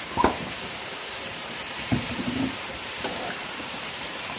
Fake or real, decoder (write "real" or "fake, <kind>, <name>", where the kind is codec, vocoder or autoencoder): fake, vocoder, BigVGAN v2